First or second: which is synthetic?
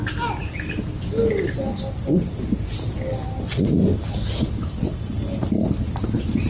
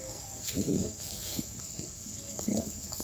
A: second